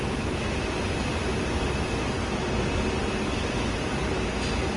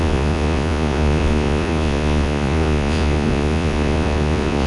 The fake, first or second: second